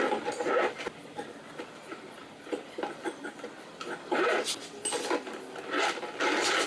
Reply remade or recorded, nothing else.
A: recorded